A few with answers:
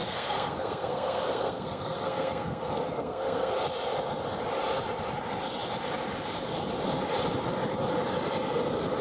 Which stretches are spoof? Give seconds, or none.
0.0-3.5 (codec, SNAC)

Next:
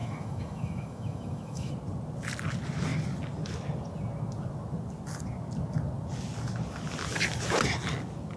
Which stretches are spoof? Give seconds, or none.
0.0-1.7 (autoencoder, DAC-VAE)

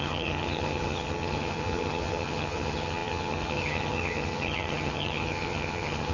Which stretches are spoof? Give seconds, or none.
0.0-6.1 (vocoder, HiFi-GAN)

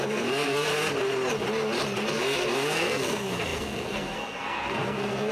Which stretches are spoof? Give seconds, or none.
0.0-0.7 (codec, SNAC); 2.1-5.3

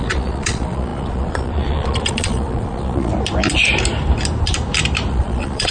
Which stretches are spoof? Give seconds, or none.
0.0-3.1 (vocoder, Vocos); 5.1-5.7

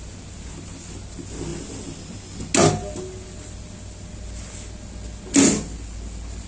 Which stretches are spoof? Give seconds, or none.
none

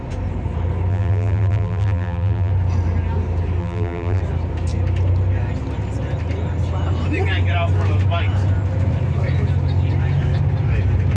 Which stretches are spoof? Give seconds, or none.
0.9-2.5 (vocoder, BigVGAN v2); 3.6-4.2

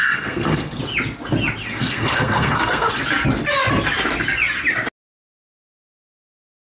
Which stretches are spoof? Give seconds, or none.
0.0-0.8 (codec, SNAC); 1.8-2.9